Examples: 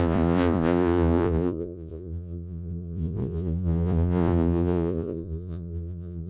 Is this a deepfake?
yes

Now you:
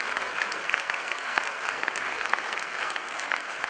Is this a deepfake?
yes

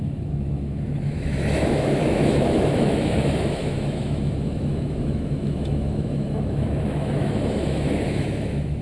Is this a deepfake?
yes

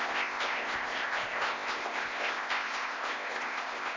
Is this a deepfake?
yes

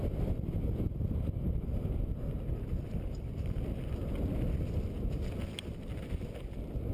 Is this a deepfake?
no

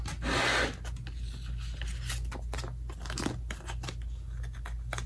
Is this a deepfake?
no